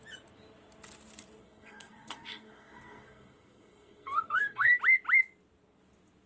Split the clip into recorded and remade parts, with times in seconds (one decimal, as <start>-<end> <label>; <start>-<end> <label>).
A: 0.0-1.4 recorded; 1.4-4.8 remade; 4.8-6.3 recorded